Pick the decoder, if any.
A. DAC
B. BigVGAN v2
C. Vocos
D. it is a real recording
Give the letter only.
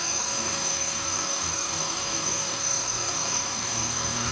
A